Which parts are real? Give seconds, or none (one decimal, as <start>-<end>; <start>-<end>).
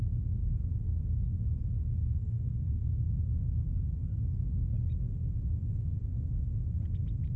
0.0-2.0; 3.0-7.4